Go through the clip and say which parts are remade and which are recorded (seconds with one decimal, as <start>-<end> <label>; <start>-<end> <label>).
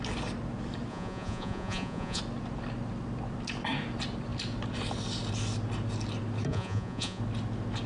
0.0-0.9 recorded; 0.9-2.2 remade; 2.2-6.5 recorded; 6.5-7.2 remade; 7.2-7.9 recorded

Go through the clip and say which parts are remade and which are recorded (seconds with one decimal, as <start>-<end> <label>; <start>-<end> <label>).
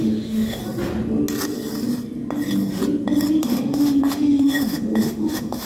0.0-0.6 remade; 0.6-3.4 recorded; 3.4-5.7 remade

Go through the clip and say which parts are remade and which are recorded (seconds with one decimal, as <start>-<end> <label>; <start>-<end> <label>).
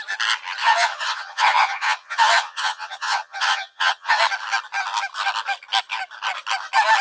0.0-0.6 recorded; 0.6-4.2 remade; 4.2-7.0 recorded